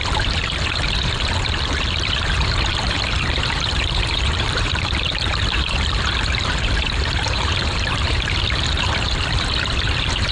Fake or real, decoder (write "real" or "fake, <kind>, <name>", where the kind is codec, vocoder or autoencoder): fake, vocoder, BigVGAN v2